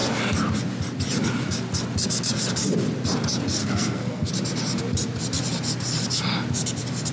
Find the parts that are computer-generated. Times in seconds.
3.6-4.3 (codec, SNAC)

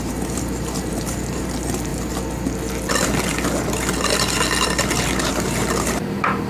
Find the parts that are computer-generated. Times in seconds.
0.0-1.9 (vocoder, BigVGAN v2); 5.3-6.5

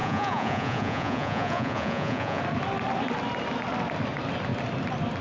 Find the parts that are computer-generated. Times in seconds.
0.0-2.4 (vocoder, Vocos)

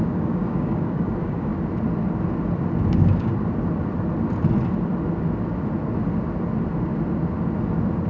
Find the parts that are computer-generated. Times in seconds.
0.0-1.5 (codec, DAC); 2.9-3.3

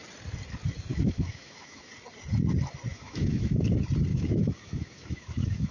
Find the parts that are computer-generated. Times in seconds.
0.9-1.9 (autoencoder, DAC-VAE); 2.9-3.6; 4.1-5.7